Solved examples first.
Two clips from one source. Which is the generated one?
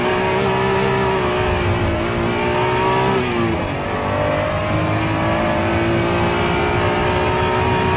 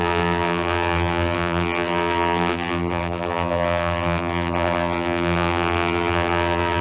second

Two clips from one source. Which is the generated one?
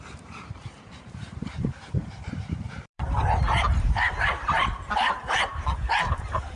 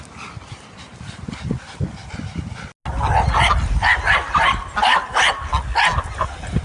first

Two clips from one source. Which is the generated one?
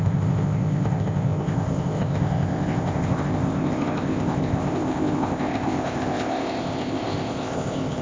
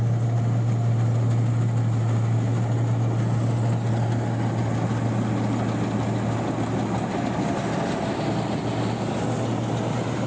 first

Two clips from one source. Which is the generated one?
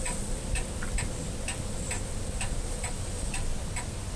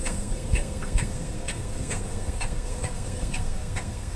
second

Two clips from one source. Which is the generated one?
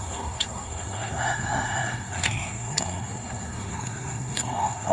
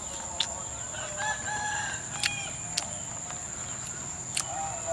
first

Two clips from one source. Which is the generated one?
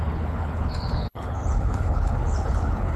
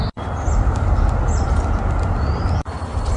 first